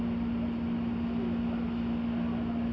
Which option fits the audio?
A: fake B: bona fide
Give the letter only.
B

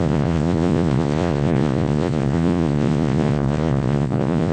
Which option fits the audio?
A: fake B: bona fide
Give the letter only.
A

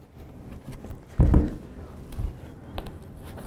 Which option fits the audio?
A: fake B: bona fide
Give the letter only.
B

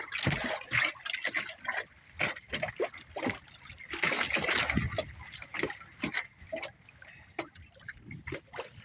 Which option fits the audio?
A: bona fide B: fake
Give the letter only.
A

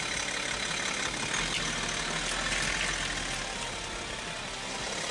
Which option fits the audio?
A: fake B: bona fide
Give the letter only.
B